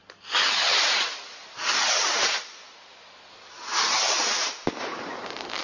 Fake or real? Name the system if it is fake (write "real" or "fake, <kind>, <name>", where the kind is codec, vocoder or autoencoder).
real